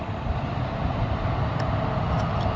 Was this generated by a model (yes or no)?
no